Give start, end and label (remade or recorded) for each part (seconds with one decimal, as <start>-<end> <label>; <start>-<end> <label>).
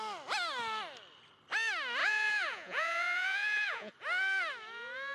0.0-2.0 recorded; 2.0-3.9 remade; 3.9-5.1 recorded